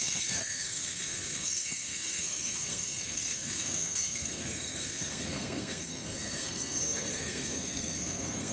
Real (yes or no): no